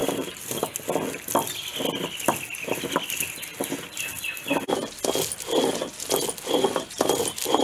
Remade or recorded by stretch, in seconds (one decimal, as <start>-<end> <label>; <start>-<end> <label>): 0.0-0.6 remade; 0.6-7.6 recorded